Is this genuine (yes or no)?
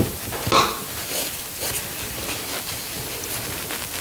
yes